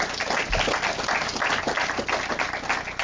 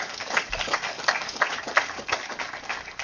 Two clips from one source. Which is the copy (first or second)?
second